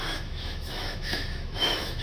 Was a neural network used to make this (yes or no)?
yes